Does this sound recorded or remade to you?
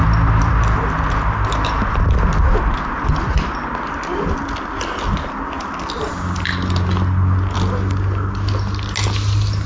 recorded